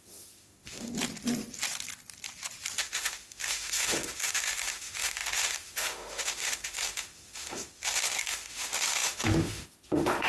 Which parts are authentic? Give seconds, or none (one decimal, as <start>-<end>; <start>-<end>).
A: 0.9-2.8